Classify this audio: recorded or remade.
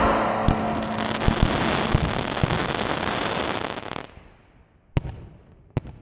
recorded